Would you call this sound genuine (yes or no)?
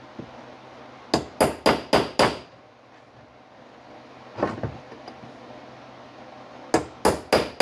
yes